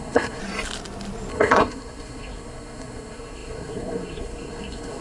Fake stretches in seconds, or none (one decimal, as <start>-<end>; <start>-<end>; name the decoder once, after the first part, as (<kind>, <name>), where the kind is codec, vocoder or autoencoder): 0.0-0.4 (codec, SNAC); 1.3-5.0